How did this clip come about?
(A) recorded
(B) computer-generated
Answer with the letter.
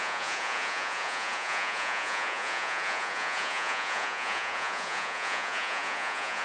B